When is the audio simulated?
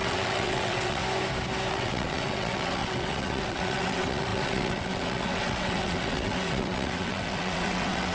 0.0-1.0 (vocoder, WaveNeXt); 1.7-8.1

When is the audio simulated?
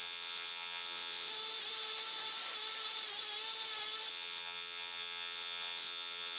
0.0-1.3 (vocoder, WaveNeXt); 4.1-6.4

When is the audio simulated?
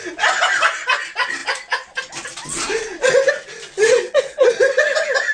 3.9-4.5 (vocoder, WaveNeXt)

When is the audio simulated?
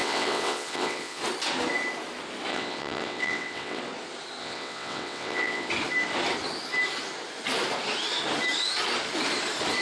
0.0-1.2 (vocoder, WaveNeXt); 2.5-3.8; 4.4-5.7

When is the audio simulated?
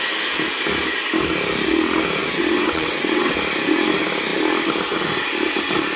2.2-3.3 (vocoder, WaveNeXt)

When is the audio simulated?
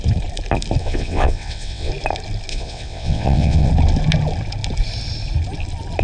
0.8-1.9 (vocoder, WaveNeXt); 2.5-3.7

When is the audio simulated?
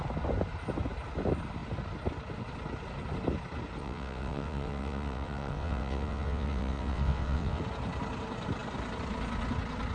3.8-7.6 (vocoder, WaveNeXt)